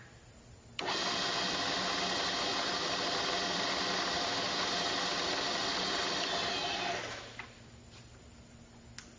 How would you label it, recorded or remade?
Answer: recorded